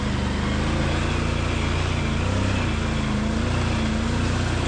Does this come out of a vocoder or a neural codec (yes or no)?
no